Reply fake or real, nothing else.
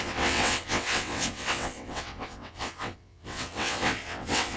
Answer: fake